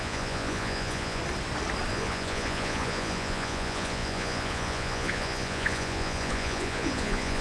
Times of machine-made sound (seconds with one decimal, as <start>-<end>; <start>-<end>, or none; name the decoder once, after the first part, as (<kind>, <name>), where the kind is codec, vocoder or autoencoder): 0.0-1.2 (vocoder, Vocos); 1.9-7.4